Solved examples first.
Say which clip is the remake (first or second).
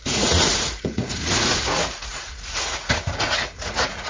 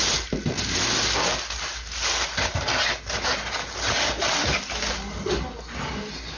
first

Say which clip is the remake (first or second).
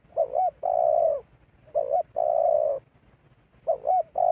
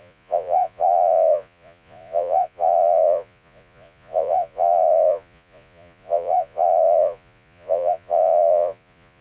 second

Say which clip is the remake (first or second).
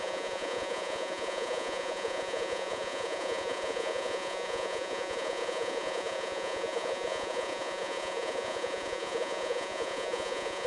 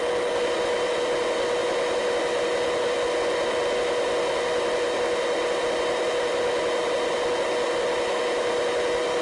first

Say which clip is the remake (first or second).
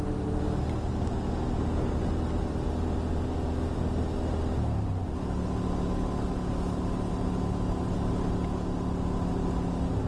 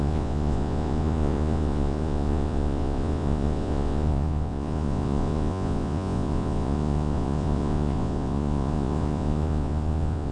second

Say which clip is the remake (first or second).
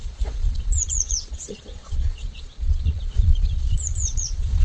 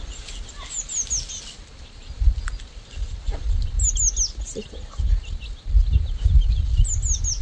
first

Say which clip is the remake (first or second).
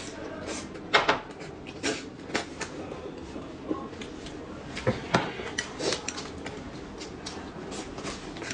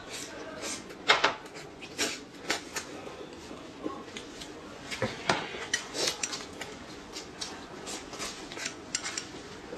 second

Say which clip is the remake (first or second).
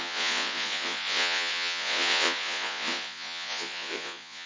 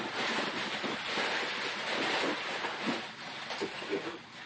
first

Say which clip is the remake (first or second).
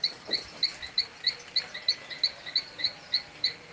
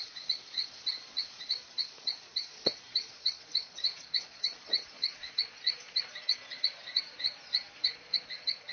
second